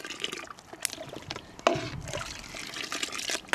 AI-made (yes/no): no